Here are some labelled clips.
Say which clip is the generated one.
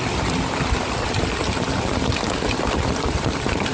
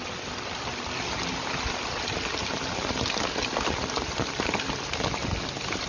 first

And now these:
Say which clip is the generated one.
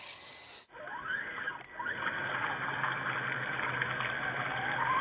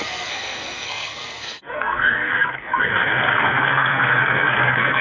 second